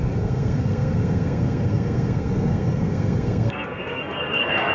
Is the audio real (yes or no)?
no